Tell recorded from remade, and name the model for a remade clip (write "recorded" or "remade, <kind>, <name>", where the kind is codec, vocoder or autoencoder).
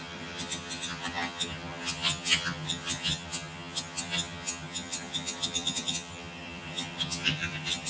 remade, vocoder, HiFi-GAN